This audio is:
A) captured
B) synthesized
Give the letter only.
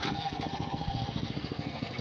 B